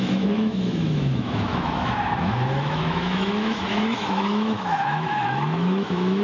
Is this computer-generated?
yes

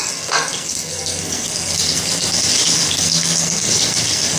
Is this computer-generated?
yes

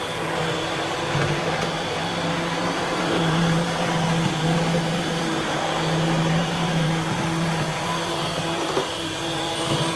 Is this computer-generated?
yes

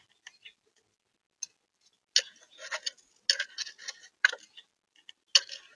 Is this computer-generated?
no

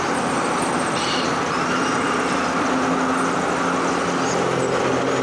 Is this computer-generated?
no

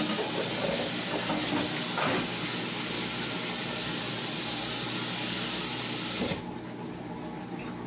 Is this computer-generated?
no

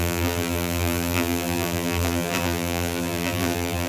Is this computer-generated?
yes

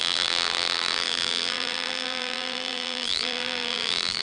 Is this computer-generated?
yes